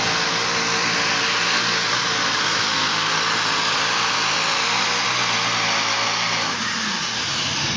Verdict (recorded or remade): recorded